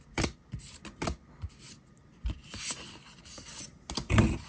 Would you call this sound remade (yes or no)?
no